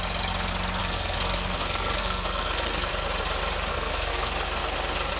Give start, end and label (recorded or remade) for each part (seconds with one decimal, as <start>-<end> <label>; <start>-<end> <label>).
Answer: 0.0-0.8 recorded; 0.8-2.9 remade; 2.9-3.7 recorded; 3.7-4.3 remade; 4.3-5.2 recorded